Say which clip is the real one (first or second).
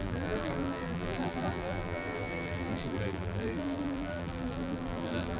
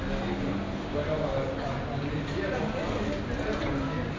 second